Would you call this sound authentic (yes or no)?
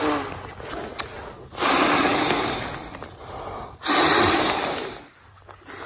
yes